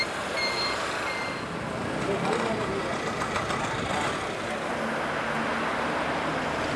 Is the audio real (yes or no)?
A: yes